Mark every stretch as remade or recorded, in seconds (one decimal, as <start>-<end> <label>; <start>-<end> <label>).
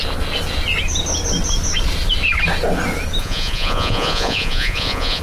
0.0-3.2 recorded; 3.2-5.2 remade